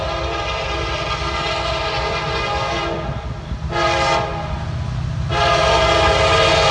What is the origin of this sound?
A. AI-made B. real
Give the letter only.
B